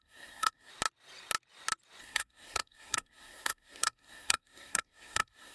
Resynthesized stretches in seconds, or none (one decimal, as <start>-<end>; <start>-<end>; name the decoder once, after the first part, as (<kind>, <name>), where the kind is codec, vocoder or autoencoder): 0.0-0.7 (codec, SNAC); 2.0-5.5